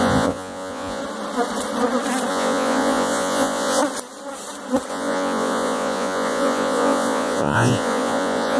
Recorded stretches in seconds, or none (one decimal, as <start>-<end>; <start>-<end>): 1.0-2.3; 3.8-4.9